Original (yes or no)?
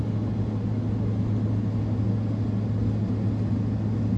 yes